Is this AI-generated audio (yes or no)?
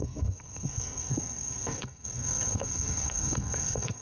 yes